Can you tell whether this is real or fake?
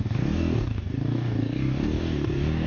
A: fake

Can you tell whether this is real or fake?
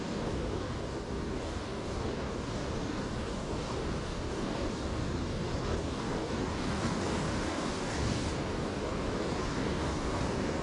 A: fake